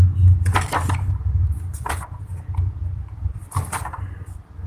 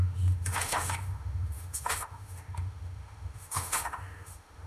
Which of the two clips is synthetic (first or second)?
second